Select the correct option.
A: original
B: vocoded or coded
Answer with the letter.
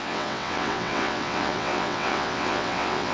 B